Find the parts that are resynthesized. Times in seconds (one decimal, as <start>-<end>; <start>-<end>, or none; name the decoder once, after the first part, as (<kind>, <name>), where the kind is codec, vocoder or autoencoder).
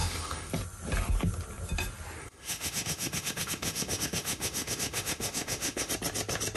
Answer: 0.0-0.5 (autoencoder, DAC-VAE); 2.2-5.9